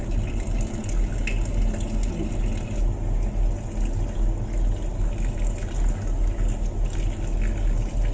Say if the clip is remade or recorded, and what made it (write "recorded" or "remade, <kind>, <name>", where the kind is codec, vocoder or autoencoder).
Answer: recorded